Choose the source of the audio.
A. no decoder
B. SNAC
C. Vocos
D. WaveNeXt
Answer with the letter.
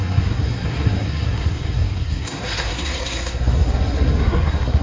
B